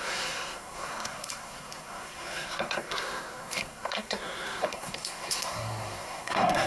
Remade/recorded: remade